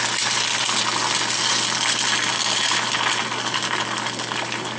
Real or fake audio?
real